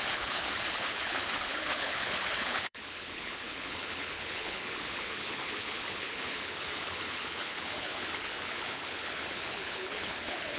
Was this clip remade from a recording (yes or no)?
yes